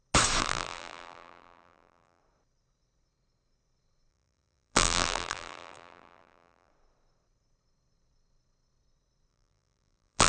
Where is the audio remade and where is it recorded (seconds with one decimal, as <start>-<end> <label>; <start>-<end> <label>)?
0.0-0.4 recorded; 0.4-2.2 remade; 2.2-4.1 recorded; 4.1-6.7 remade; 6.7-9.3 recorded; 9.3-10.3 remade

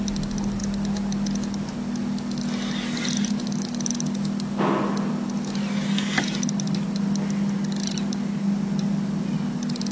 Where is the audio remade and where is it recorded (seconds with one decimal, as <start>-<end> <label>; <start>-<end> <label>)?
0.0-9.9 recorded

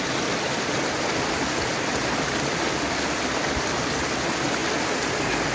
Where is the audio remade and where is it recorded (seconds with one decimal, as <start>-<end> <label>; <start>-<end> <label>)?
0.0-5.5 recorded

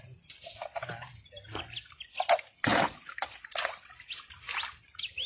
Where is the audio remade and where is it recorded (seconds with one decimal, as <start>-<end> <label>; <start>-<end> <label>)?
0.0-5.3 recorded

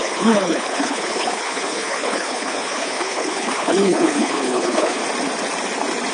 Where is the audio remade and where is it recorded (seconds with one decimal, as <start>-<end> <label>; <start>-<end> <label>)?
0.0-5.0 remade; 5.0-6.1 recorded